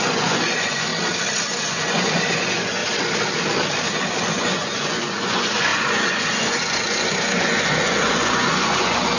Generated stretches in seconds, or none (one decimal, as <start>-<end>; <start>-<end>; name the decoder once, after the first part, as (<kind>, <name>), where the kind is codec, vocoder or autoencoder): 0.0-0.9 (vocoder, Vocos); 1.6-2.8; 4.2-9.2